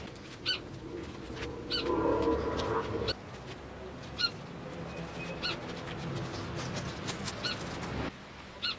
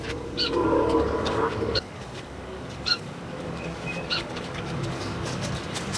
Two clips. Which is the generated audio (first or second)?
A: second